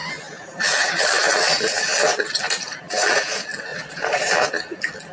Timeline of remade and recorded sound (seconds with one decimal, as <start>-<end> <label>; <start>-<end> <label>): 0.0-3.7 recorded; 3.7-4.3 remade; 4.3-5.1 recorded